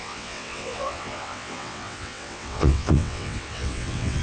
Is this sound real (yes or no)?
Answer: no